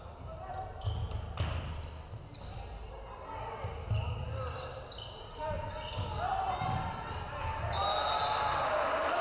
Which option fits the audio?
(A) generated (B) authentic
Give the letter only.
B